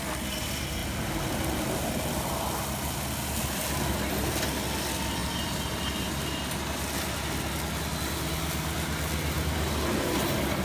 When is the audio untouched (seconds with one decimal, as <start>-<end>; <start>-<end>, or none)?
0.0-10.6